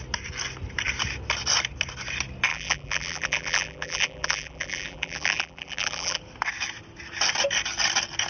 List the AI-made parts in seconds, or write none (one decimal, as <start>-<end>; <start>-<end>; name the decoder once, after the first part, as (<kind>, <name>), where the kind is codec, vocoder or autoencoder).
2.5-6.2 (vocoder, BigVGAN v2)

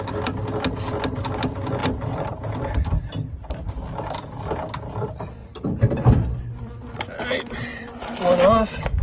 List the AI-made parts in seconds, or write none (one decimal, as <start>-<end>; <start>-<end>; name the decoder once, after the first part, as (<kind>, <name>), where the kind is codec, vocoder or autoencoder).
1.8-3.7 (vocoder, BigVGAN v2); 5.4-6.6; 7.7-8.2